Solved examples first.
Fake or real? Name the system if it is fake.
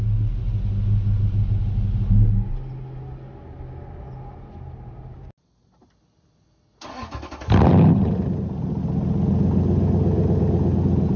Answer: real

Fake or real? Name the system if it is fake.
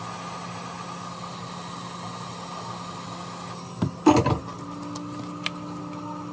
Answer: real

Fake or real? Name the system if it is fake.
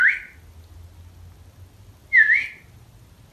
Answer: real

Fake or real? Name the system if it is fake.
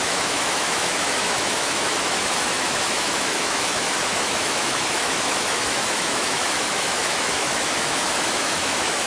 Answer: fake, autoencoder, DAC-VAE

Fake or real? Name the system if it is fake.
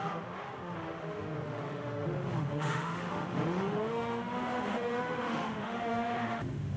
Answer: fake, autoencoder, DAC-VAE